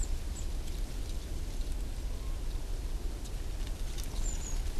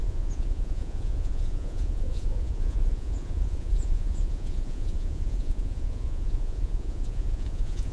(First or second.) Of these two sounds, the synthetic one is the second